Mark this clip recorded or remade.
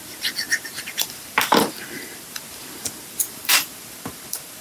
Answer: remade